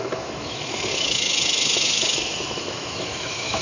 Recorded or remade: remade